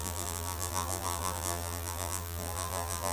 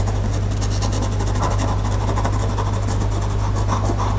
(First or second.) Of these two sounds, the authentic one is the second